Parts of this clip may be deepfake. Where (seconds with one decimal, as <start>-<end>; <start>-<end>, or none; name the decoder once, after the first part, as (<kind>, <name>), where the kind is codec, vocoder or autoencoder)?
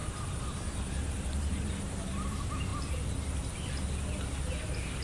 0.0-1.8 (vocoder, BigVGAN v2)